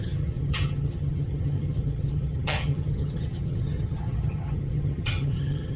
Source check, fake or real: fake